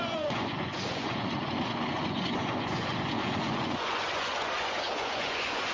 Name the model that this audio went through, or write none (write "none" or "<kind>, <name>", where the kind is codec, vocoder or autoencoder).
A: vocoder, Vocos